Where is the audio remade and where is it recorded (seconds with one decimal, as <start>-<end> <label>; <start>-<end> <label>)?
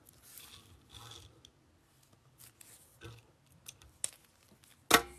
0.0-5.2 recorded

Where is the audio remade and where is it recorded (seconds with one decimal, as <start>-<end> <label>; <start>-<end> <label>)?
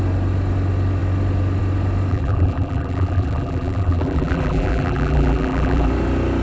0.0-2.1 recorded; 2.1-5.9 remade; 5.9-6.4 recorded